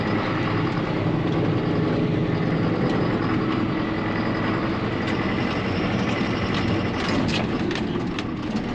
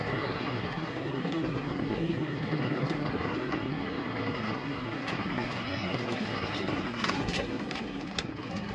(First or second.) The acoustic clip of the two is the first